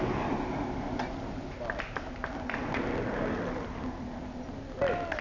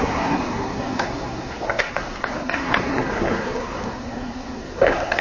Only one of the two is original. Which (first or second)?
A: first